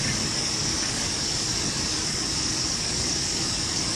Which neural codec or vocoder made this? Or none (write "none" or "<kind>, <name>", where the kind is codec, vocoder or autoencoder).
codec, DAC